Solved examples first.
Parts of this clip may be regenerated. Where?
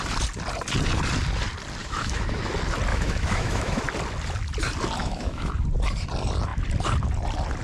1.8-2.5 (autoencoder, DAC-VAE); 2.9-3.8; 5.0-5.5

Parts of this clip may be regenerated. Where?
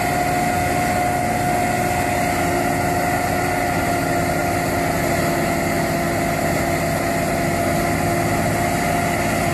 none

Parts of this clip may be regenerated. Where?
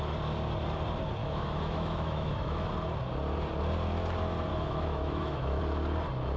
1.2-2.7 (autoencoder, DAC-VAE); 4.5-5.6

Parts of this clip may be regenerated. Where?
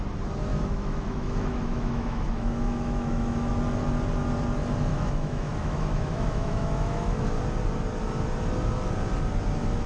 0.5-3.5 (autoencoder, DAC-VAE); 4.9-7.4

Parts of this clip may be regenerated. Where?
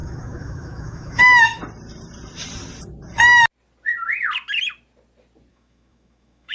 0.0-1.6 (autoencoder, DAC-VAE); 5.5-6.5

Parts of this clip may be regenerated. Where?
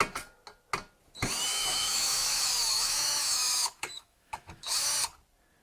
1.5-4.9 (autoencoder, DAC-VAE)